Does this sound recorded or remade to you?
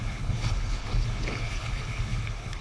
remade